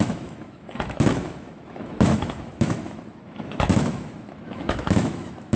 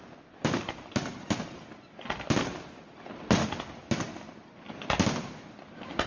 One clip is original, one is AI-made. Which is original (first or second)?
second